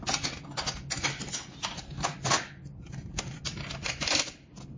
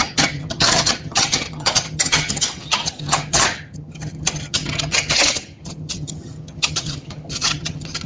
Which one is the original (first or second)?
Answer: first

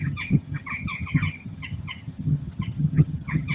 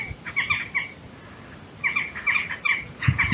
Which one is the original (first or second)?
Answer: second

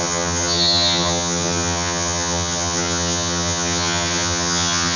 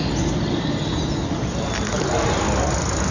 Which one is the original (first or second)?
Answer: second